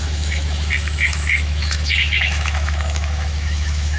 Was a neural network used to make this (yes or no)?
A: yes